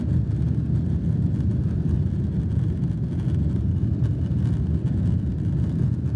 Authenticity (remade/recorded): recorded